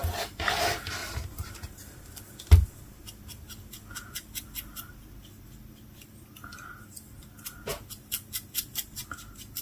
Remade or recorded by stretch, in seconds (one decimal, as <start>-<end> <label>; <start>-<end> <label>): 0.0-1.0 recorded; 1.0-2.2 remade; 2.2-9.6 recorded